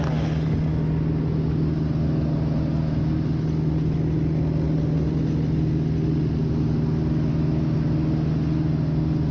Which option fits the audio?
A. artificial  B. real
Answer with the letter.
B